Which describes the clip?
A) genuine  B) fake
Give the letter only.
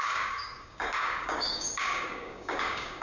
B